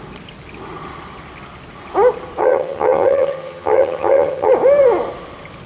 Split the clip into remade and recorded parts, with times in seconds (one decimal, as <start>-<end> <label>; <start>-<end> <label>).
0.0-2.4 recorded; 2.4-4.5 remade; 4.5-5.7 recorded

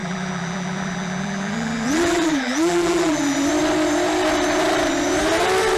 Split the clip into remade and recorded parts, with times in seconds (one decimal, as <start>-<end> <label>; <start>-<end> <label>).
0.0-3.5 remade; 3.5-5.8 recorded

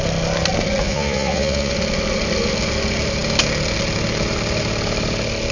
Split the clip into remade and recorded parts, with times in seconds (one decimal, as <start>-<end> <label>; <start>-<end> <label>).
0.0-0.8 recorded; 0.8-1.7 remade; 1.7-5.5 recorded

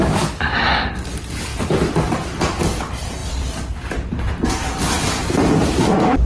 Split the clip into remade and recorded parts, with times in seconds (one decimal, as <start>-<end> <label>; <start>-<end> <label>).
0.0-1.5 recorded; 1.5-2.3 remade; 2.3-5.6 recorded; 5.6-6.3 remade

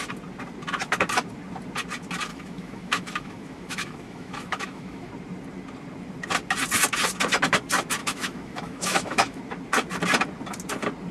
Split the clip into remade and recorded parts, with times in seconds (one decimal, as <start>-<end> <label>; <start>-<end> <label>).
0.0-2.3 recorded; 2.3-5.1 remade; 5.1-8.0 recorded; 8.0-9.4 remade; 9.4-11.1 recorded

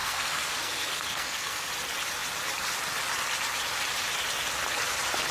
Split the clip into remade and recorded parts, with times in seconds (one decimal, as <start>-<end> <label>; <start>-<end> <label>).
0.0-1.7 remade; 1.7-5.3 recorded